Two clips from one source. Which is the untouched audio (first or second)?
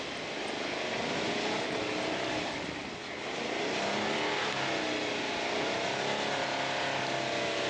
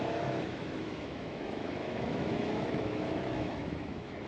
first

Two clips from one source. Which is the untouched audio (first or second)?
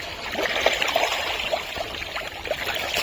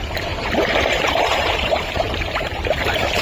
first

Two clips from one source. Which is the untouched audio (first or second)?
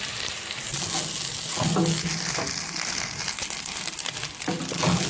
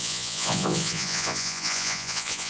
first